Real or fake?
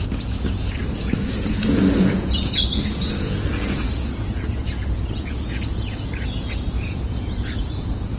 fake